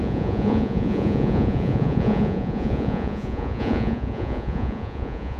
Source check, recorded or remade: remade